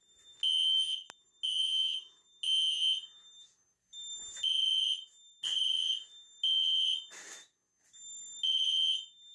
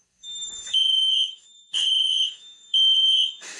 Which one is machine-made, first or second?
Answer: second